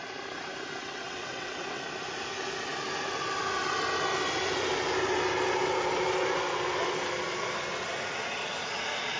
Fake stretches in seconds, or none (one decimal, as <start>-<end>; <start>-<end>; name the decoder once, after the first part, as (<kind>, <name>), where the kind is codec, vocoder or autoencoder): 0.8-1.8 (vocoder, WaveNeXt)